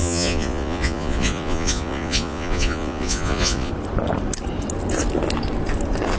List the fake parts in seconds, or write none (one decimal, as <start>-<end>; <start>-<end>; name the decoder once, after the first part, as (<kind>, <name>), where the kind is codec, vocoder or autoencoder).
0.0-3.7 (vocoder, Vocos)